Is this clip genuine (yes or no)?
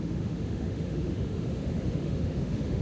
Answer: no